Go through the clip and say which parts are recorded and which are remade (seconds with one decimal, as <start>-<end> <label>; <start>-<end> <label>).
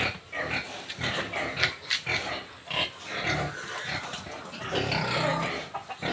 0.0-6.1 recorded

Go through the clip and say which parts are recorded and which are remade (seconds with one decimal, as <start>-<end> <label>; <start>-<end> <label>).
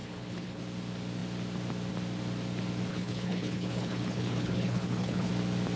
0.0-0.6 remade; 0.6-2.9 recorded; 2.9-5.3 remade; 5.3-5.8 recorded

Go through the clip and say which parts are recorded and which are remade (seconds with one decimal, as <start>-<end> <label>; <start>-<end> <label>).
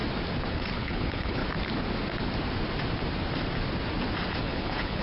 0.0-0.5 recorded; 0.5-1.4 remade; 1.4-4.4 recorded; 4.4-5.0 remade